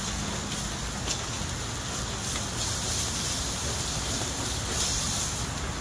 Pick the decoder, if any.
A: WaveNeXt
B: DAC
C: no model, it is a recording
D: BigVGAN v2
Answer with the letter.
C